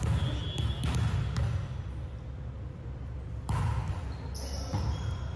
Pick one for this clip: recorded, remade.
recorded